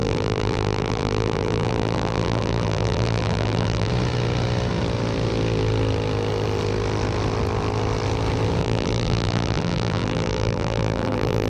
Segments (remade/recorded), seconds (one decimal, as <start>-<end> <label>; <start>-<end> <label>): 0.0-3.9 remade; 3.9-8.6 recorded; 8.6-11.5 remade